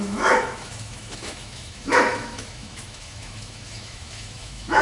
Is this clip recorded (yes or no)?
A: no